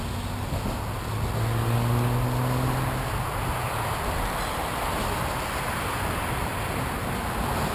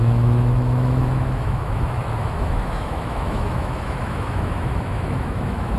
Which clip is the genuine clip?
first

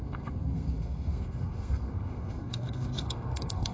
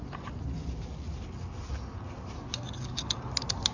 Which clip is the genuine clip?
second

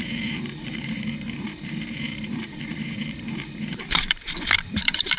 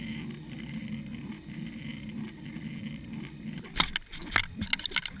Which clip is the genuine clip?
second